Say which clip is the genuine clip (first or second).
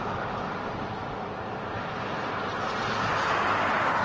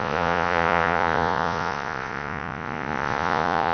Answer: first